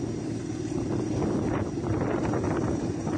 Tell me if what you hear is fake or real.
real